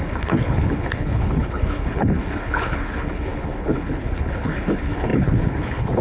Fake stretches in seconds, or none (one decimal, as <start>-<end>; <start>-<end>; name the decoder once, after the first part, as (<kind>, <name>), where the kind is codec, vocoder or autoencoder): 0.0-6.0 (codec, HILCodec)